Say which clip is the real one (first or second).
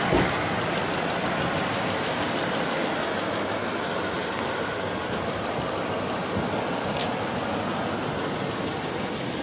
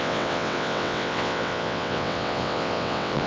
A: first